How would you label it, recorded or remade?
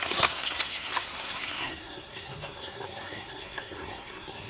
remade